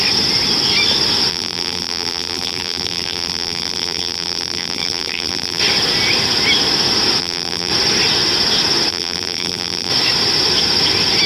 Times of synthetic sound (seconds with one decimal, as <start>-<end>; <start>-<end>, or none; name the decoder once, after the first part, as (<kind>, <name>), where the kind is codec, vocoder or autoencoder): 1.3-5.6 (vocoder, BigVGAN v2); 7.2-7.7; 8.9-9.9